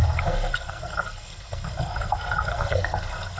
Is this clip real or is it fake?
fake